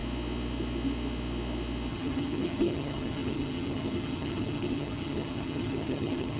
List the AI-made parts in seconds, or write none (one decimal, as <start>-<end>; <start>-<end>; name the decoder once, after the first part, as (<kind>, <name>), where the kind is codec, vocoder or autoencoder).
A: 1.9-6.4 (vocoder, HiFi-GAN)